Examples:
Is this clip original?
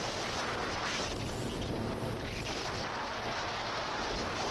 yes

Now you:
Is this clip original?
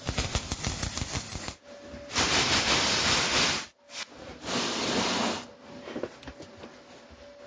yes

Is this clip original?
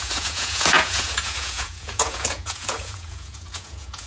no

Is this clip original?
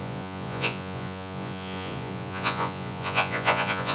no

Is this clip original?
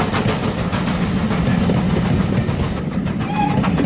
yes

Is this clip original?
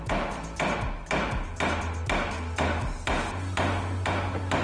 yes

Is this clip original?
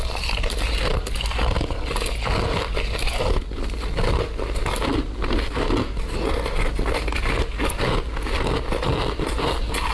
yes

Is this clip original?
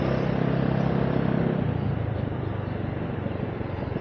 yes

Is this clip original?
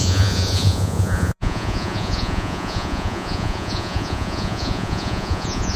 no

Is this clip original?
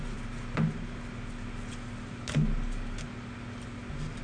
yes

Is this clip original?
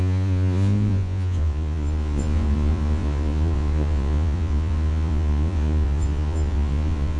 no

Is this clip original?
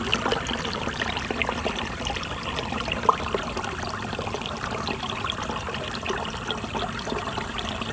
yes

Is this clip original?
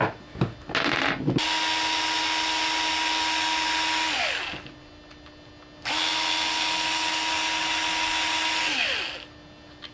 yes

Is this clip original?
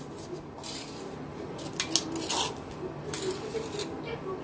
yes